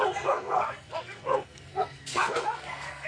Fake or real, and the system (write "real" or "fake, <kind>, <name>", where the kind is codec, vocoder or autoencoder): fake, codec, SNAC